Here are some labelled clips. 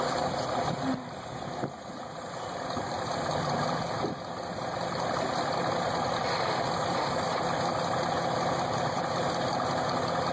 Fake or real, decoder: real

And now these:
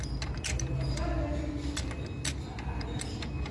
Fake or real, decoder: real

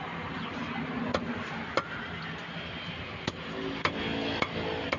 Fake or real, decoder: real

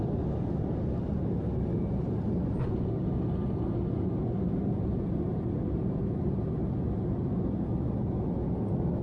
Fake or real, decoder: real